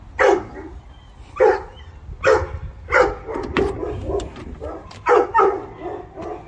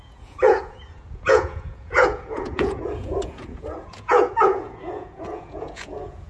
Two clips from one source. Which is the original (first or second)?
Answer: first